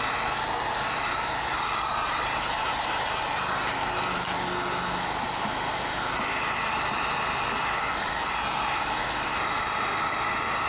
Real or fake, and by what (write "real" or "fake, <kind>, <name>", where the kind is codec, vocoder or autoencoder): real